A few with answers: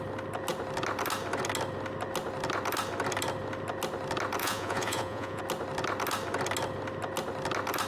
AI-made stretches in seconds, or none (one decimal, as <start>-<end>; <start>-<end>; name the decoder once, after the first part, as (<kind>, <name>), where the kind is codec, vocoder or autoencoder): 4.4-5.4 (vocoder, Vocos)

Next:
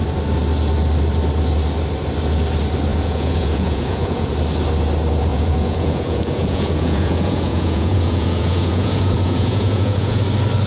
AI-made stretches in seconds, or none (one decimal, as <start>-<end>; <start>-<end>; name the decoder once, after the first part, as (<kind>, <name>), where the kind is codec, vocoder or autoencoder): 2.9-4.3 (vocoder, Vocos); 5.3-10.2

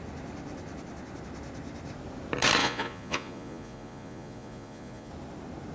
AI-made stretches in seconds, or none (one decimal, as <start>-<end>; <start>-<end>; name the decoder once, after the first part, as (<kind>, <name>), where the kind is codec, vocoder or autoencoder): 2.6-5.1 (vocoder, Vocos)

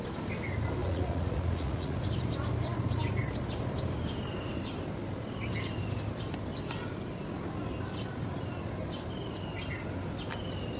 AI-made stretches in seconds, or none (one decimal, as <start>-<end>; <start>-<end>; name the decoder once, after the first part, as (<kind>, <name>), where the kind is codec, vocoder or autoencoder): 0.8-2.0 (vocoder, Vocos)